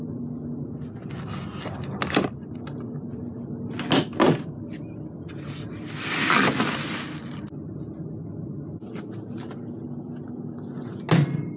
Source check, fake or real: real